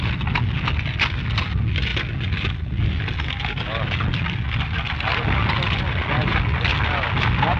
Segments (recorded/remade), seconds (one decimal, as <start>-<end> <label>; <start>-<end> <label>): 0.0-7.6 recorded